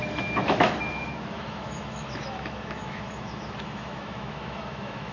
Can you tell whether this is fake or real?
fake